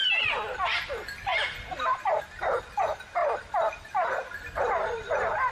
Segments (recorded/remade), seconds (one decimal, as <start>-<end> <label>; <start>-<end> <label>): 0.0-1.3 recorded; 1.3-2.2 remade; 2.2-3.2 recorded; 3.2-5.5 remade